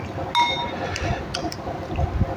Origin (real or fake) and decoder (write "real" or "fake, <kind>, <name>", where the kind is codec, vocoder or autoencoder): real